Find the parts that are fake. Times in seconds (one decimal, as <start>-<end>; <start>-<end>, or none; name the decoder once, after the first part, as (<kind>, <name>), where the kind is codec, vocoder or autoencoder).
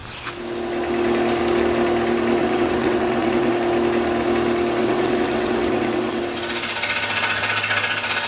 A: 2.4-3.5 (vocoder, WaveNeXt); 4.8-6.2